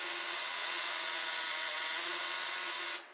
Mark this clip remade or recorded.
remade